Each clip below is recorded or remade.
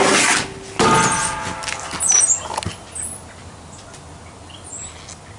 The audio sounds recorded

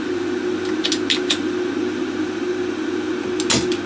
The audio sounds recorded